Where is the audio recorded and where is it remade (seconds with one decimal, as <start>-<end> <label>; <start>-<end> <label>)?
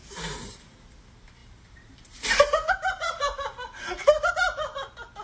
0.0-0.6 remade; 0.6-1.4 recorded; 1.4-4.3 remade; 4.3-5.2 recorded